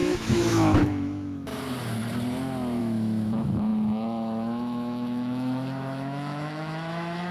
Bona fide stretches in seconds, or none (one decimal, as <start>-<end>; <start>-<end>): 1.5-2.8